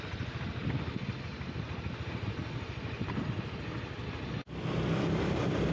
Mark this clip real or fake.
real